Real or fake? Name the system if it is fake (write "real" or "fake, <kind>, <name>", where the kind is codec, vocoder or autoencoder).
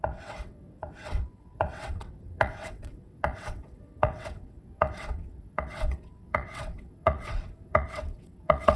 fake, vocoder, WaveNeXt